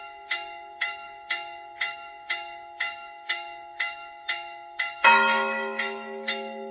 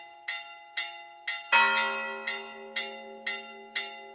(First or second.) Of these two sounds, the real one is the second